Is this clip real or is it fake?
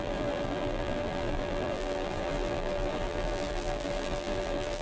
fake